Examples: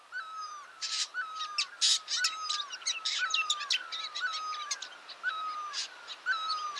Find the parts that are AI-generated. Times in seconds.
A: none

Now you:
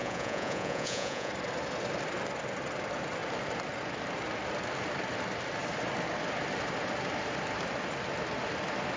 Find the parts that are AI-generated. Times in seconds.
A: 0.0-1.3 (vocoder, Vocos)

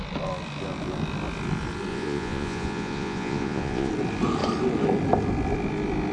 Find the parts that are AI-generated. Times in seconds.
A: 1.9-3.9 (vocoder, Vocos)

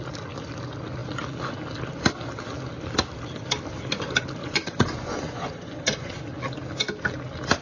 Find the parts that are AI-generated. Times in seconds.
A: 4.4-6.2 (vocoder, Vocos)

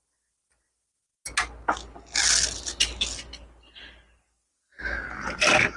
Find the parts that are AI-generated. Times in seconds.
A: none

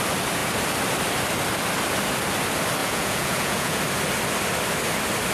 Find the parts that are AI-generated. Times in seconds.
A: 2.8-3.8 (vocoder, Vocos)

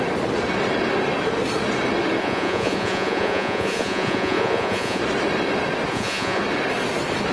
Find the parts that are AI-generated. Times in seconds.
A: 2.2-5.0 (vocoder, Vocos); 5.9-6.4